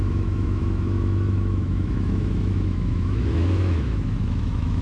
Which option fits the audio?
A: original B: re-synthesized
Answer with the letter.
B